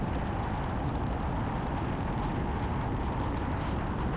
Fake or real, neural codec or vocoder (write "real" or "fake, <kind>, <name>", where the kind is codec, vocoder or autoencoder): real